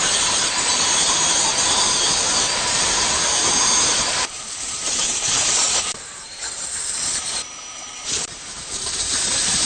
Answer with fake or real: fake